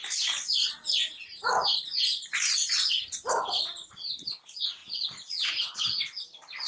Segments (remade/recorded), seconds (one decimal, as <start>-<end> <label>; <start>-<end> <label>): 0.0-6.7 recorded